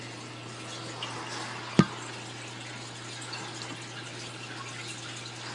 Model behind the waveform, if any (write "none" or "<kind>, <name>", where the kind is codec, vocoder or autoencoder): none